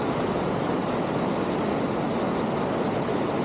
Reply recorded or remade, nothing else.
recorded